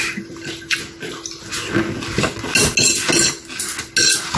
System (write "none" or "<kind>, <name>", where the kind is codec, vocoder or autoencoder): none